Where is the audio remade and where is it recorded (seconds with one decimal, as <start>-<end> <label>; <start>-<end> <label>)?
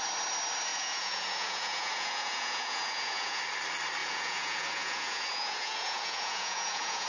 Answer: 0.0-0.7 recorded; 0.7-3.4 remade; 3.4-4.0 recorded; 4.0-7.1 remade